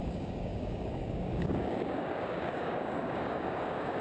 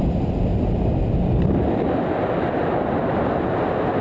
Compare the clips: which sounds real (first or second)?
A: second